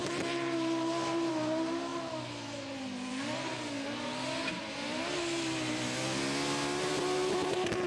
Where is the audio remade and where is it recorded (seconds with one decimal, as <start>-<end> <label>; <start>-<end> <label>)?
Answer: 0.0-7.9 recorded